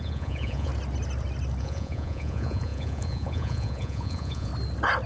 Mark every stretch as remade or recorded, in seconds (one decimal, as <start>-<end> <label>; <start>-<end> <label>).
0.0-0.7 remade; 0.7-1.6 recorded; 1.6-4.5 remade; 4.5-5.1 recorded